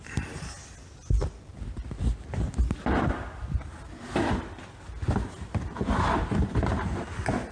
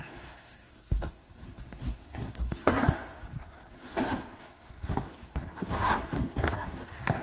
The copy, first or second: second